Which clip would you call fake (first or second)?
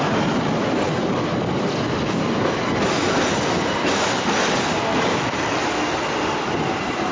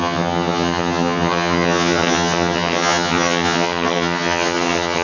second